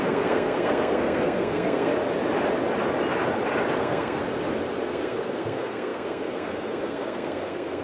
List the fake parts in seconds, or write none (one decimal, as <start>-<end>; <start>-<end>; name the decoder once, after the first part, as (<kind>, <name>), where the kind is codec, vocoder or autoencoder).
0.0-1.9 (codec, SNAC); 3.8-4.2; 4.9-7.8

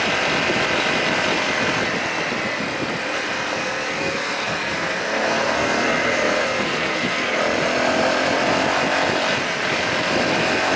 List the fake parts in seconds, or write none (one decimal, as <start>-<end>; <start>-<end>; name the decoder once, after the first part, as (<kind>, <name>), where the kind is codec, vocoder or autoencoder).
3.6-7.4 (codec, SNAC)

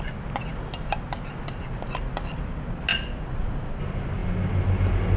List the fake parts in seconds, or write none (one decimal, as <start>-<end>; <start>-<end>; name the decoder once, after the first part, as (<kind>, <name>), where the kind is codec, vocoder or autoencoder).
none

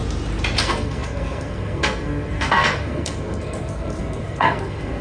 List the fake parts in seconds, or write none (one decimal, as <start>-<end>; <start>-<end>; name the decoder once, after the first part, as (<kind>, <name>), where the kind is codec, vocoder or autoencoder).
0.6-5.0 (codec, SNAC)

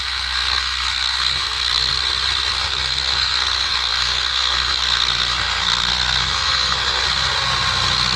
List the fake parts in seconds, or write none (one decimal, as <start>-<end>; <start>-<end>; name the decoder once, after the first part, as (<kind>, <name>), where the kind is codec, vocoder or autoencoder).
0.0-1.9 (codec, SNAC); 2.5-7.0